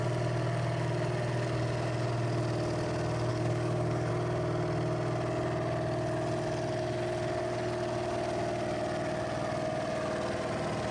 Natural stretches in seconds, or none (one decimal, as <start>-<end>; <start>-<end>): 0.0-3.3; 4.1-10.9